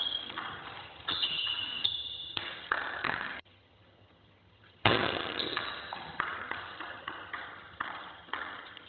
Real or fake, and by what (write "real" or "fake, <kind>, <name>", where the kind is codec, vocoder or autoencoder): fake, vocoder, HiFi-GAN